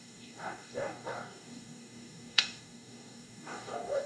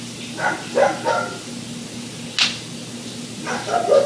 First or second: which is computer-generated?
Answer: first